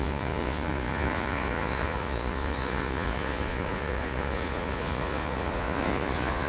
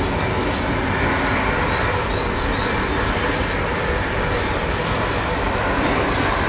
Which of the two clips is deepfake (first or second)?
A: first